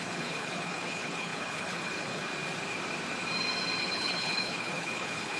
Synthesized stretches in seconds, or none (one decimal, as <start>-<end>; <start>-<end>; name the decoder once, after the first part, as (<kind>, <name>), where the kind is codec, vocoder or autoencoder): 0.0-2.3 (codec, HILCodec); 3.8-5.4